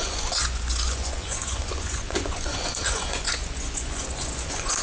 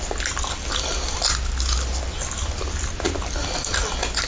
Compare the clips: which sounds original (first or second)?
second